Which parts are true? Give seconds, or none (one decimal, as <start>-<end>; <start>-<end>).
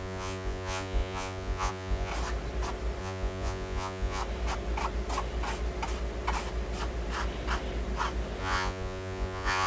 2.1-3.0; 4.2-8.4